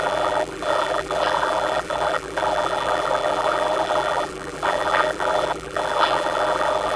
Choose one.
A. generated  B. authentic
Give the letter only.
A